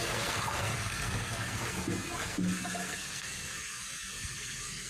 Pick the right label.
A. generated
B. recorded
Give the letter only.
A